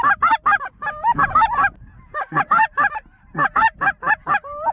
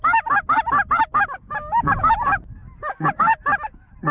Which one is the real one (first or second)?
second